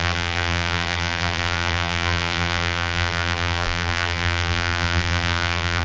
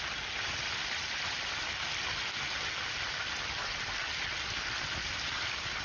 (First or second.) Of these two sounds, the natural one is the second